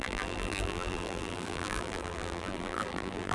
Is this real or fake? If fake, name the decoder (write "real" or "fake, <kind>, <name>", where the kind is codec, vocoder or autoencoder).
fake, vocoder, BigVGAN v2